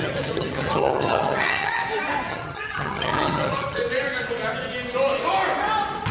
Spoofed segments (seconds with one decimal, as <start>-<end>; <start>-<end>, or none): 0.0-1.8; 2.3-3.8